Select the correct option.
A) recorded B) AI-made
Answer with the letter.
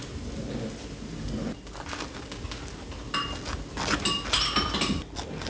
A